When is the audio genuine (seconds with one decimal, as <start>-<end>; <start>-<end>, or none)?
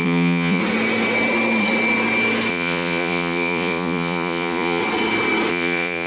0.6-2.5; 4.8-5.5